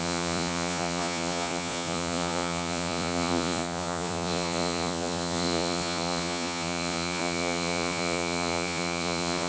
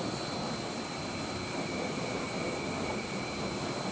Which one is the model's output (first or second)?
first